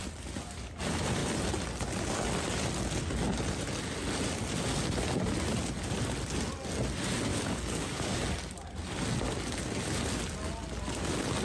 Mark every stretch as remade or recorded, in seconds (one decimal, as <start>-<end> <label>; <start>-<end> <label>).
0.0-7.3 recorded; 7.3-8.2 remade; 8.2-11.4 recorded